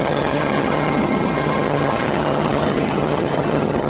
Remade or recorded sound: remade